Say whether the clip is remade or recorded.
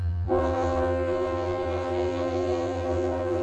remade